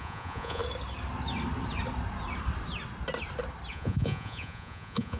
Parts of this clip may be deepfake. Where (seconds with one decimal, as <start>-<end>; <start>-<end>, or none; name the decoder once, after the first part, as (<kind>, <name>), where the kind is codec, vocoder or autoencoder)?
0.0-0.6 (vocoder, Vocos); 3.7-5.2